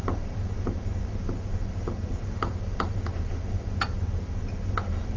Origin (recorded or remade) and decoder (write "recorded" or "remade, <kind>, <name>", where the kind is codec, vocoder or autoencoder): recorded